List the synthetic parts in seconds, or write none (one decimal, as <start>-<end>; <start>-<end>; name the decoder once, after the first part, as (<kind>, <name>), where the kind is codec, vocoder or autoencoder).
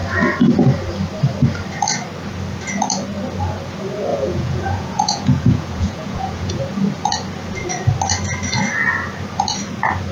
4.1-6.6 (vocoder, Vocos)